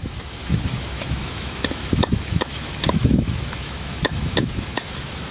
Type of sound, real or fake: fake